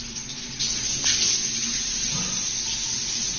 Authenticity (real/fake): real